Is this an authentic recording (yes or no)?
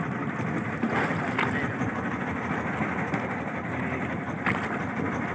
yes